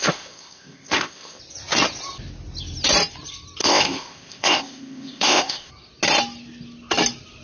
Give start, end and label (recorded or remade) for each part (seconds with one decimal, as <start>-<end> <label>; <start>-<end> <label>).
0.0-1.4 remade; 1.4-3.6 recorded; 3.6-5.7 remade; 5.7-7.4 recorded